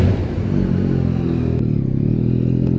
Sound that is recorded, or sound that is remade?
recorded